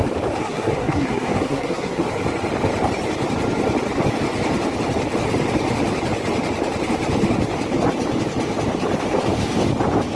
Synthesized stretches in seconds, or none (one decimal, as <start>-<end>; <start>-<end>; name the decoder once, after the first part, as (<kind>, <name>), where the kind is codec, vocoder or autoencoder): 0.4-2.0 (codec, SNAC)